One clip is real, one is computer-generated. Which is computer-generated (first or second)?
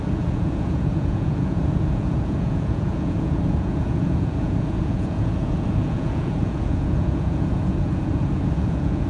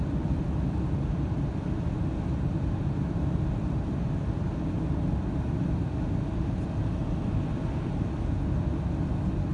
first